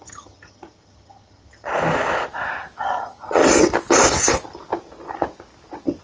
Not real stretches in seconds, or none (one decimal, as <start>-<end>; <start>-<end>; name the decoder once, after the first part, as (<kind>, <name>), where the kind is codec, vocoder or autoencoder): 0.0-1.7 (vocoder, HiFi-GAN); 2.8-3.4